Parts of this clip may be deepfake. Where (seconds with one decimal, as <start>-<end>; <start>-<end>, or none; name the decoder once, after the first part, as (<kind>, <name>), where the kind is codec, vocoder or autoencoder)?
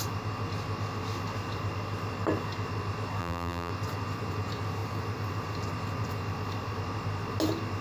3.2-3.7 (vocoder, BigVGAN v2)